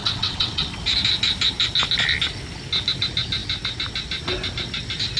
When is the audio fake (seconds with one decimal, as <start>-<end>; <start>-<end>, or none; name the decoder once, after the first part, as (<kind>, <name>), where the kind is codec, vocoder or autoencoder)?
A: 0.0-0.7 (vocoder, WaveNeXt)